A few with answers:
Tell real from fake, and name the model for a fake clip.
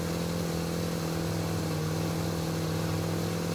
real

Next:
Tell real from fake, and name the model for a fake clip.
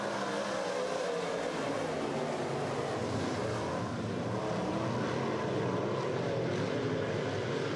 real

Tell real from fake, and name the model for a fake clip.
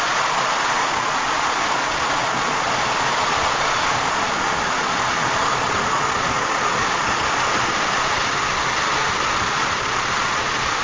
fake, vocoder, Vocos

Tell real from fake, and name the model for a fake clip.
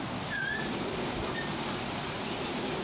real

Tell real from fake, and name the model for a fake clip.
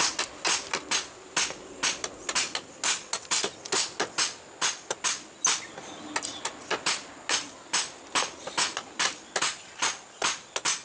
real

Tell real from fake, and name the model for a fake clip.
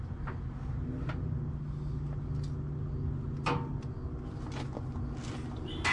real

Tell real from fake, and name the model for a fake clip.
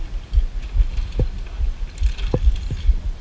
real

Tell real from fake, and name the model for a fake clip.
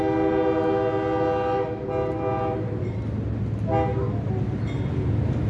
real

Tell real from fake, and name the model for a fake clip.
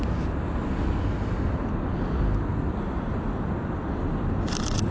real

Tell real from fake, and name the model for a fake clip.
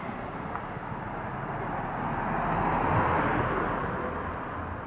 real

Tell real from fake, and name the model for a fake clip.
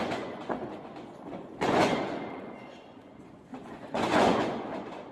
fake, vocoder, Vocos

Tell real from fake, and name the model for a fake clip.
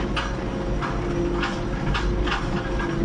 real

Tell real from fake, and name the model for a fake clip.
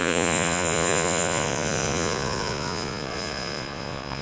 fake, vocoder, Vocos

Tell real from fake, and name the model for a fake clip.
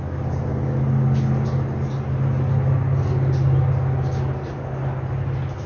real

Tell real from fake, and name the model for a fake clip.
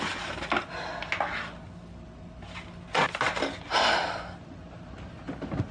real